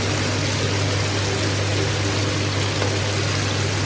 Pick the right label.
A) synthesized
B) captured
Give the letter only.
B